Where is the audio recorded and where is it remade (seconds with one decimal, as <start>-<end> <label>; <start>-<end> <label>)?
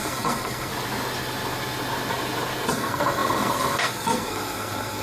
0.0-0.7 remade; 0.7-2.7 recorded; 2.7-5.0 remade